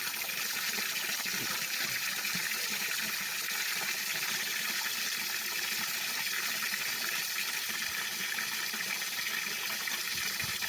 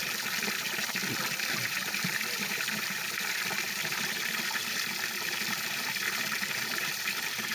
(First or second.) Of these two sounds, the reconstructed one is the second